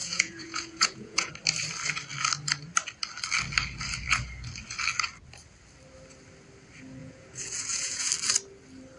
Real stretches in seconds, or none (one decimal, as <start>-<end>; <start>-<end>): 1.3-7.0; 8.1-9.0